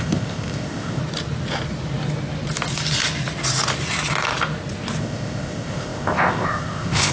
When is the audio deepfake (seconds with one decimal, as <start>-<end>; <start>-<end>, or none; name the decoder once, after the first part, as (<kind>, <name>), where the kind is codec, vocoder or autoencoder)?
0.0-1.0 (codec, ZipCodec); 5.0-7.1